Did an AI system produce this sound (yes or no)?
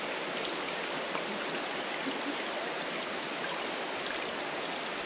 no